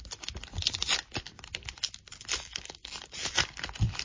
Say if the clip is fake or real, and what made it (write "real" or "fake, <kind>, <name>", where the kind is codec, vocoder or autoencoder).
real